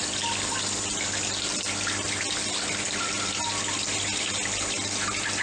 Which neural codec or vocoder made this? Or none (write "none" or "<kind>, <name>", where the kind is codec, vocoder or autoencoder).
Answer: none